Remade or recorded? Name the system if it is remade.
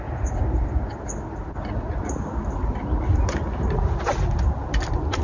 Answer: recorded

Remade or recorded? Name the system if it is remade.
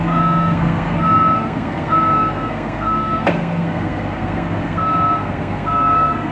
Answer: remade, codec, SNAC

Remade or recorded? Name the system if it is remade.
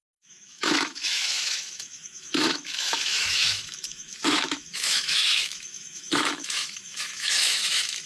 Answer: remade, autoencoder, DAC-VAE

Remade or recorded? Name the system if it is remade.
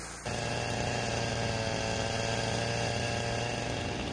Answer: recorded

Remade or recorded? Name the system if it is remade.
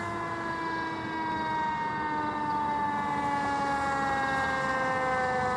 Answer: recorded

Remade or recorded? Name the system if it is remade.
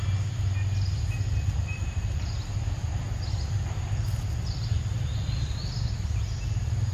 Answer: recorded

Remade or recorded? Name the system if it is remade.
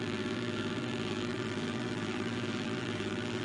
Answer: remade, vocoder, BigVGAN v2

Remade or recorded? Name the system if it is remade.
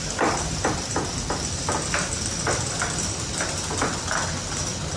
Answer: recorded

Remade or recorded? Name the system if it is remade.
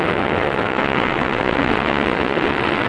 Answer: remade, vocoder, WaveNeXt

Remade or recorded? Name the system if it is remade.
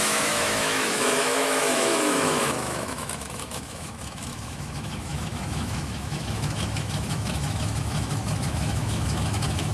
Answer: remade, autoencoder, DAC-VAE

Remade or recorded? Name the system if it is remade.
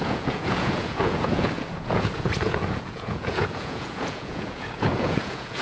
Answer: remade, vocoder, Vocos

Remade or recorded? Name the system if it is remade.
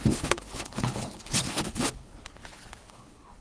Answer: remade, codec, HILCodec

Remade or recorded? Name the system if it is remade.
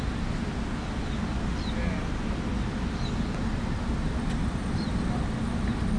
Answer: recorded